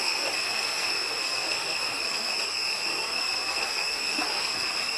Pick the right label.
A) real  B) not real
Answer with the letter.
B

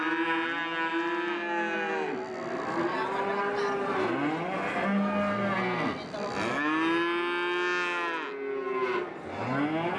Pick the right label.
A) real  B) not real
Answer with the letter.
A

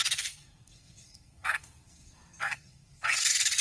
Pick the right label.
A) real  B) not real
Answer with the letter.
B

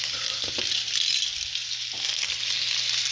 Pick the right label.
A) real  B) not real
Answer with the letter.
A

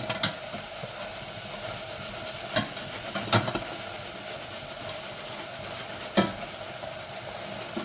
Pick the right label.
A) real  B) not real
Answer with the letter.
A